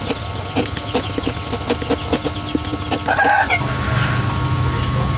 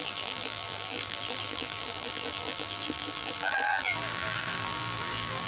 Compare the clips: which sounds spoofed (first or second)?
second